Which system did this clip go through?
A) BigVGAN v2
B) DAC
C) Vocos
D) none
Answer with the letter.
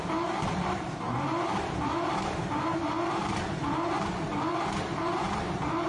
A